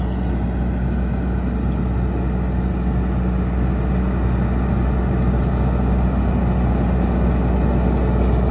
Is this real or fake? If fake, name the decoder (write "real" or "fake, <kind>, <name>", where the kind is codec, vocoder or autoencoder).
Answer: real